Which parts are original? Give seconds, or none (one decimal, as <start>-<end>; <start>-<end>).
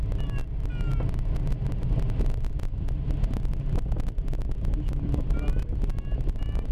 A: 0.0-6.7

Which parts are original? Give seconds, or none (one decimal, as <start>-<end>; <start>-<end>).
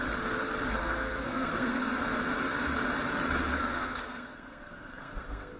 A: 0.0-0.8; 2.0-3.5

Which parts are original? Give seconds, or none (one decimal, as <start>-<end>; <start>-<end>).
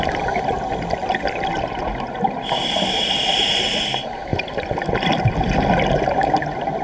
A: 0.0-6.8